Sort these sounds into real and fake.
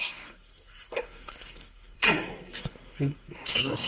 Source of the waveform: fake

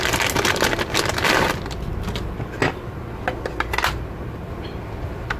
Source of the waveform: real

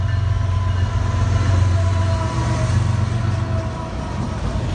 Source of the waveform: real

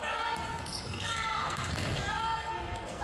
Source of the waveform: fake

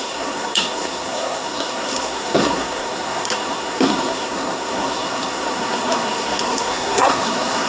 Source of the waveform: fake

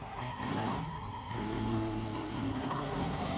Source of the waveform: fake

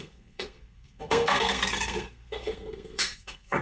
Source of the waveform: fake